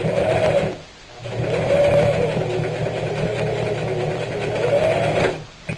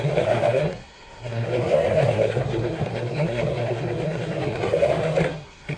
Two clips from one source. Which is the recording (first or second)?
first